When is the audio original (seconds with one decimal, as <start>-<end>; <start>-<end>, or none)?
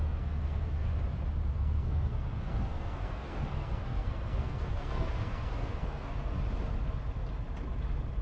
0.9-1.5; 6.3-8.2